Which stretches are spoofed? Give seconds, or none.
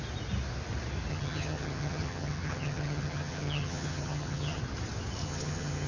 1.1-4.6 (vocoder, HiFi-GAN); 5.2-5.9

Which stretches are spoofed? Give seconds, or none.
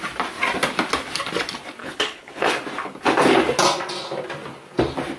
1.8-2.5 (codec, HILCodec)